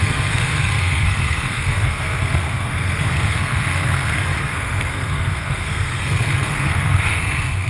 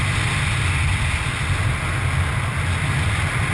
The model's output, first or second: first